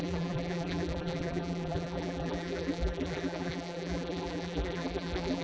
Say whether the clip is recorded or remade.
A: remade